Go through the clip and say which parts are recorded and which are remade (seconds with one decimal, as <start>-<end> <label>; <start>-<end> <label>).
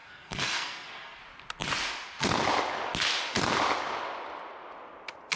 0.0-1.2 remade; 1.2-5.4 recorded